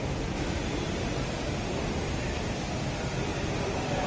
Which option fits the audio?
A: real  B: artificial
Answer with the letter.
A